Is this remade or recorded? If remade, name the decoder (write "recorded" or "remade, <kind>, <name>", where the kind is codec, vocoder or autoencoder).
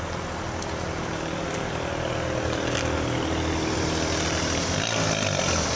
recorded